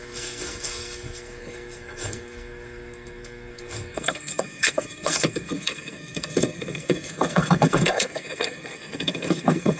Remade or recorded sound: remade